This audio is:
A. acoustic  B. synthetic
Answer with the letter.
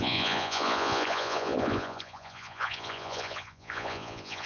B